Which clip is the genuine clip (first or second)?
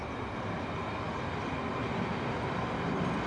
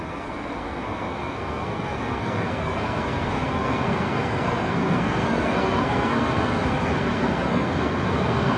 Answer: first